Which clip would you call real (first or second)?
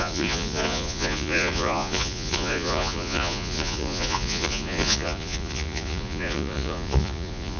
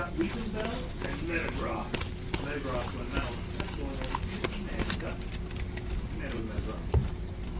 second